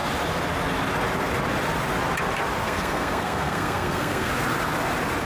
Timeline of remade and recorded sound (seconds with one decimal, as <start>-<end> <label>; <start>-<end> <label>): 0.0-2.6 recorded; 2.6-4.3 remade; 4.3-5.2 recorded